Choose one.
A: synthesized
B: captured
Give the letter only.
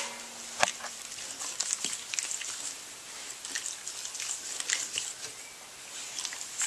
B